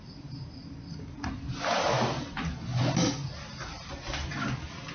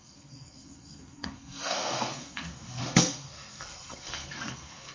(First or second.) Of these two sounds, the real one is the first